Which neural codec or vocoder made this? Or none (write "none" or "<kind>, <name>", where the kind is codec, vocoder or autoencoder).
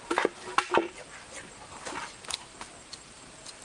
none